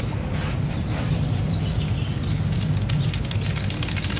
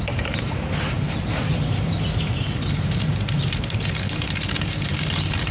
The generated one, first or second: second